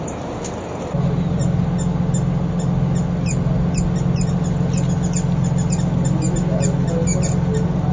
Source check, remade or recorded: recorded